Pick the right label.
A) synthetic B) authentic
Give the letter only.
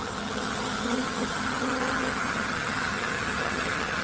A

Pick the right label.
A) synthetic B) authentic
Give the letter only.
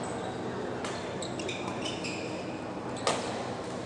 B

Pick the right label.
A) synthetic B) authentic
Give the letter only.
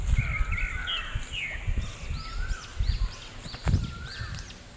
B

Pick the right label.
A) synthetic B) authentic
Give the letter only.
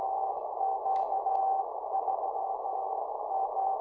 A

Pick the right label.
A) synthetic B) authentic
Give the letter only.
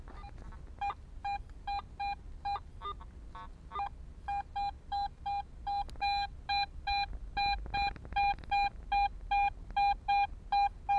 B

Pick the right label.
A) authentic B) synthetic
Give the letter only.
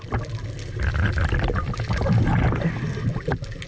A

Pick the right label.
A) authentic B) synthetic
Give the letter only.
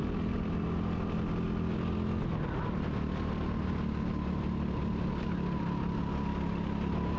A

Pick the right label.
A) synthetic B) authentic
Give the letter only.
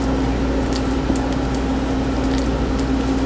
B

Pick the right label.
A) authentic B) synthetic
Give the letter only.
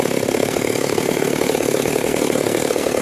B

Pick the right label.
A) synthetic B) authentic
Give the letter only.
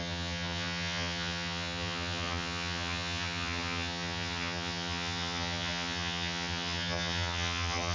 A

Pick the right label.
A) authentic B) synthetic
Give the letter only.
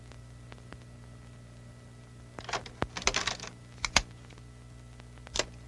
A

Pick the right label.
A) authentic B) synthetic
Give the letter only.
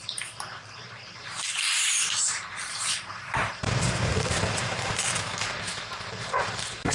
B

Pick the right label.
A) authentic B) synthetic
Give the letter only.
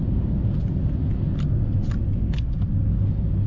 A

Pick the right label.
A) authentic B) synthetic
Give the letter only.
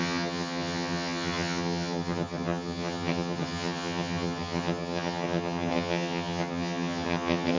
B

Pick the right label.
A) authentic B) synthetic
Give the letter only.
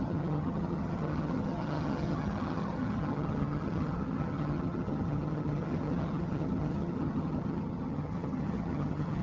B